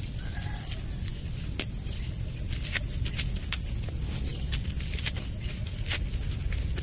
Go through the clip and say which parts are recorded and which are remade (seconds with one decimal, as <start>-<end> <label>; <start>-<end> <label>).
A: 0.0-6.8 recorded